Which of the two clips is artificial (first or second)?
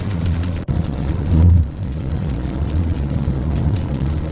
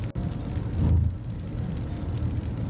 first